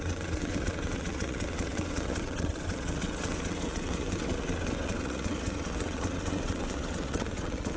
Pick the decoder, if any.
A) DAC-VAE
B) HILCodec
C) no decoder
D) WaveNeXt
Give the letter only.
D